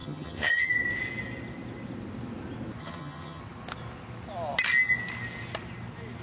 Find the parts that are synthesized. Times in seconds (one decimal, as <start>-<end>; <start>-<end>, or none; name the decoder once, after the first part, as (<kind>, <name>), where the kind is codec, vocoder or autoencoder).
0.0-0.7 (vocoder, HiFi-GAN); 2.8-3.4